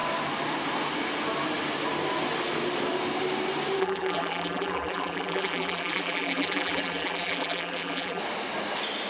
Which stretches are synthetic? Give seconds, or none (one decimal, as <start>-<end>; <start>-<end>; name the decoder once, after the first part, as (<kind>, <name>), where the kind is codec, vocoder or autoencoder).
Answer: 3.8-8.2 (vocoder, BigVGAN v2)